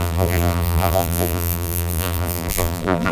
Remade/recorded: remade